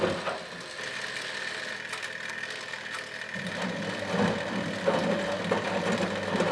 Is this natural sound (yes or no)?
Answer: yes